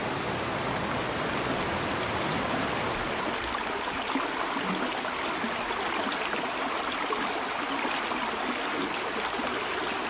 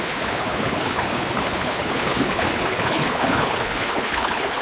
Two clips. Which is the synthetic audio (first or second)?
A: second